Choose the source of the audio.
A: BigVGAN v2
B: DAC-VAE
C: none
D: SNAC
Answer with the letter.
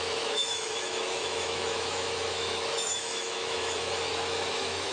B